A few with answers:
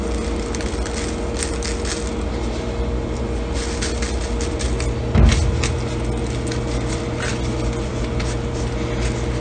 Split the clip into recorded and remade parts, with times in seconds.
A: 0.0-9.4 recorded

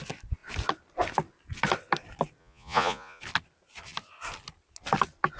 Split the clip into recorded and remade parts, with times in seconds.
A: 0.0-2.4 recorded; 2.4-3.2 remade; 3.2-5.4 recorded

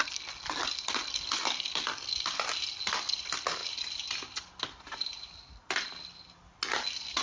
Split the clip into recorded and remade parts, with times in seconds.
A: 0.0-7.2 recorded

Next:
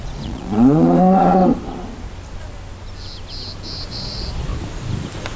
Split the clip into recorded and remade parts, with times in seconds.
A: 0.0-1.4 remade; 1.4-3.9 recorded; 3.9-4.5 remade; 4.5-5.4 recorded